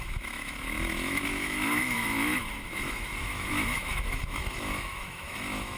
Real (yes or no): no